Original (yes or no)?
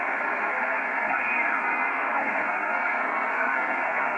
no